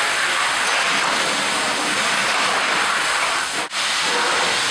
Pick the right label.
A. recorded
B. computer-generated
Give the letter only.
A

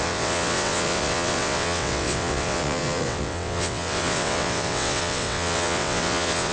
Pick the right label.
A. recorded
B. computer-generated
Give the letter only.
B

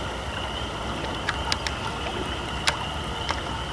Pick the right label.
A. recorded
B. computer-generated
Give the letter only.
A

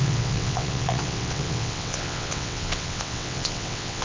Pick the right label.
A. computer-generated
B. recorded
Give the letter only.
A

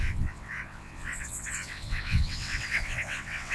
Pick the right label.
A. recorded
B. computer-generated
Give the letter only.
B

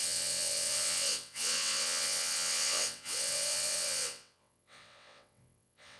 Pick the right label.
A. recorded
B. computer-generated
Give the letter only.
B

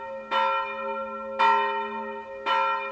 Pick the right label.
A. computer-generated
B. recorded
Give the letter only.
B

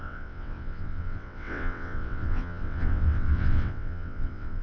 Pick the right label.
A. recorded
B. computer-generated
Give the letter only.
B